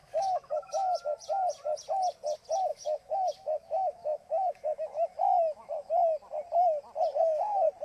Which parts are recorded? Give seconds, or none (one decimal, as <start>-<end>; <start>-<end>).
1.0-2.7; 5.9-7.8